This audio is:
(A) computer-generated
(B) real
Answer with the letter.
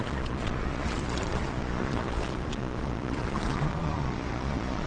A